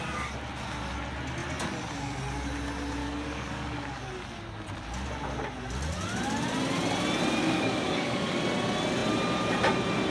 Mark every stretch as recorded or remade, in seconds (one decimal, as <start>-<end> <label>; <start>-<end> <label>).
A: 0.0-3.0 recorded; 3.0-4.1 remade; 4.1-7.4 recorded; 7.4-8.4 remade; 8.4-10.1 recorded